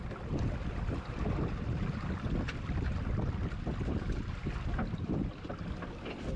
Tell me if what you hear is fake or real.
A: real